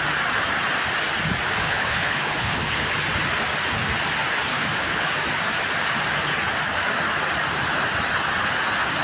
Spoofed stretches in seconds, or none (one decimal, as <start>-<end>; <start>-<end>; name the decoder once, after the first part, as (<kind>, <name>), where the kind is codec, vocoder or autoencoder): 1.6-2.9 (codec, HILCodec); 4.5-5.1